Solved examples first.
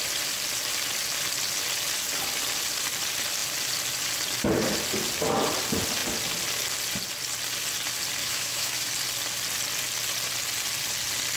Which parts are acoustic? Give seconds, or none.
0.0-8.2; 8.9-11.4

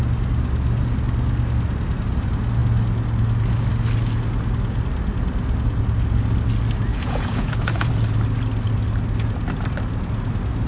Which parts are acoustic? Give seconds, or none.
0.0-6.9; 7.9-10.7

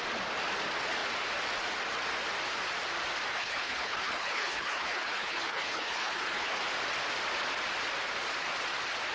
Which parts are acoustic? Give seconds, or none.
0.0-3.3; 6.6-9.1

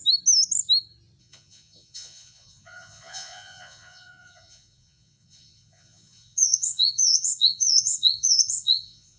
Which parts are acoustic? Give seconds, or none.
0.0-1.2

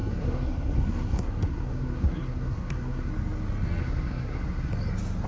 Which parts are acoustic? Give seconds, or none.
3.1-3.8; 4.7-5.3

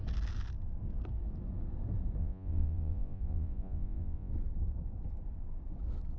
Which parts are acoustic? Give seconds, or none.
0.0-2.2; 4.3-6.2

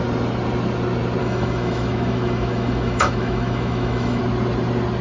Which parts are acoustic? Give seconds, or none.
0.0-1.2; 4.2-5.0